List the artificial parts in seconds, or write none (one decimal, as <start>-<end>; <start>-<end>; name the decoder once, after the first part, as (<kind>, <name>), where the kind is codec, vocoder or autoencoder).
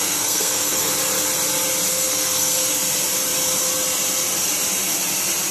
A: 0.0-0.9 (codec, SNAC); 1.9-2.7